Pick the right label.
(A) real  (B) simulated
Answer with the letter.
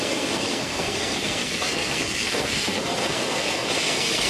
B